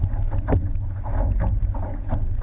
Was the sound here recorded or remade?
recorded